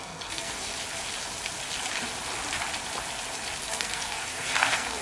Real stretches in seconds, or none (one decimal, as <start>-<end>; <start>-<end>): 0.7-3.7